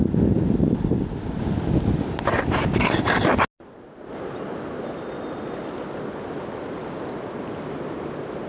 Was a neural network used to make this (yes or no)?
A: no